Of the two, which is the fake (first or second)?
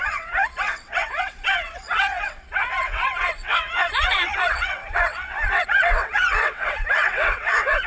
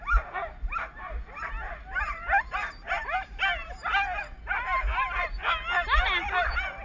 first